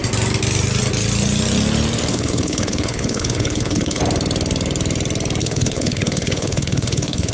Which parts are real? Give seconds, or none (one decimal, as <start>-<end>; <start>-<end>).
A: 0.0-2.1; 4.0-5.4